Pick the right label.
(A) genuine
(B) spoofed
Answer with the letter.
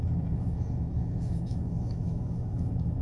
B